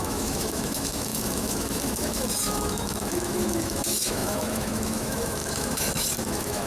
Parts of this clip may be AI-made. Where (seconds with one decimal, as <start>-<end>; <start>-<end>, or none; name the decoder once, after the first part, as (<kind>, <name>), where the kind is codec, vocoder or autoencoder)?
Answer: 0.0-6.7 (autoencoder, DAC-VAE)